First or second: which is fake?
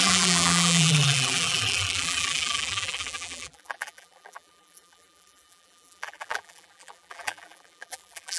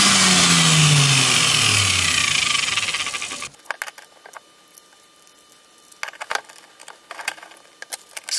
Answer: first